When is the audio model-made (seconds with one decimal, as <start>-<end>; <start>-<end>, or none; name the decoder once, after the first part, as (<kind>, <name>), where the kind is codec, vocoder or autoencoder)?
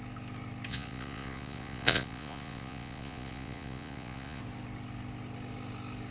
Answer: 0.7-4.4 (vocoder, Vocos)